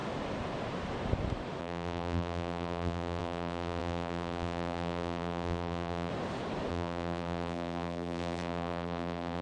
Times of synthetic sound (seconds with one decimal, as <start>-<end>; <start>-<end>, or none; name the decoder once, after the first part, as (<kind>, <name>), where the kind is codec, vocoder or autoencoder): 1.6-6.1 (vocoder, BigVGAN v2); 6.7-9.4